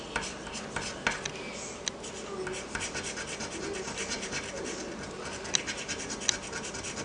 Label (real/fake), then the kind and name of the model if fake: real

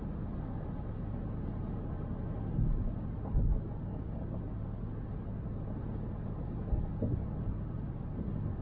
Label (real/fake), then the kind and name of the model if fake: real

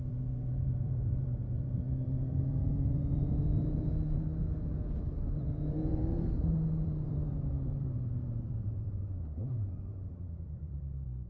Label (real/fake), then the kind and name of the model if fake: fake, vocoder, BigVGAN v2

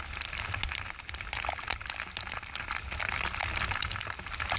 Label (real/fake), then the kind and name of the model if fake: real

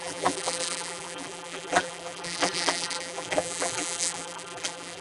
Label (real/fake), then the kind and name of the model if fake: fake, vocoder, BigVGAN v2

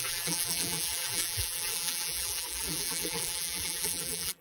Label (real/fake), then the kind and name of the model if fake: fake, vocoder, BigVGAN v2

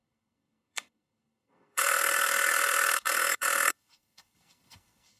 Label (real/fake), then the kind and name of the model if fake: fake, codec, SNAC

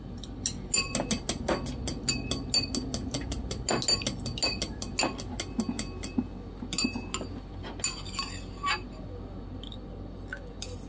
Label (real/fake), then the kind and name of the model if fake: real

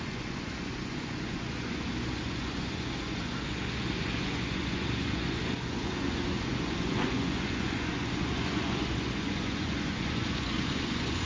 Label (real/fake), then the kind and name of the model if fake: fake, vocoder, Vocos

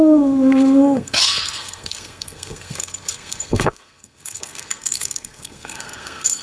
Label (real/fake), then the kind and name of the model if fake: fake, codec, SNAC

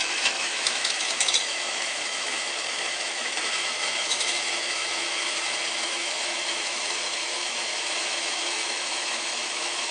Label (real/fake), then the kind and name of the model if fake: fake, autoencoder, DAC-VAE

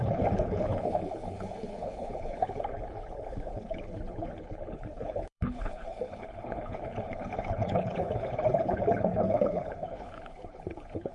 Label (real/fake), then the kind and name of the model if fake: fake, codec, HILCodec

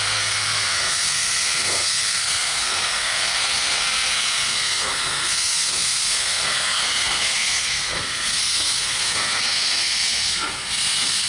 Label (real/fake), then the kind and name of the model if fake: fake, codec, SNAC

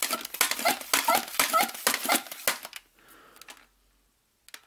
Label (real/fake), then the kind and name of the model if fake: real